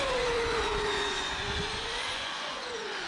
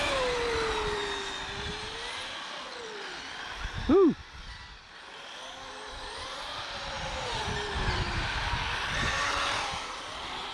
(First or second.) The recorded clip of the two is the second